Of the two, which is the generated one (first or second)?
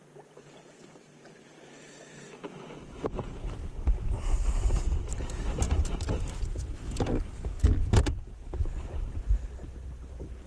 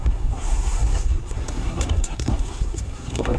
second